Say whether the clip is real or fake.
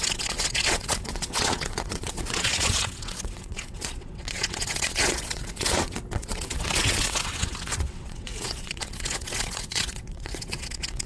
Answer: fake